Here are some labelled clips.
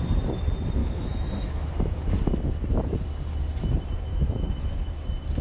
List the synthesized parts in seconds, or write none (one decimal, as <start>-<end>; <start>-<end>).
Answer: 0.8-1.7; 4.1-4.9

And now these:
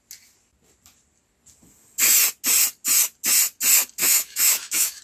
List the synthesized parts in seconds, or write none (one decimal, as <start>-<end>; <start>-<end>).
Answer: 4.0-5.0

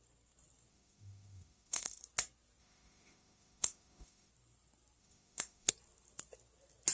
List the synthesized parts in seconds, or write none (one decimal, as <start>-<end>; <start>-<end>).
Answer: 0.7-2.0; 2.6-4.3; 5.0-5.7

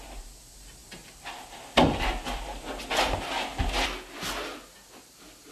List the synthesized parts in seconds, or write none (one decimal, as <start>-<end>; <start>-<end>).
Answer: none

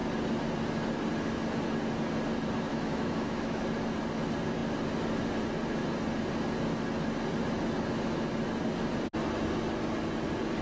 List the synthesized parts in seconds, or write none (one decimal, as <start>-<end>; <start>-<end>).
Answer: 2.7-3.6